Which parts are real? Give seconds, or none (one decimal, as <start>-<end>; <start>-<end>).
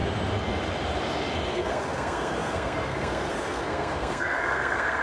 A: 0.0-1.5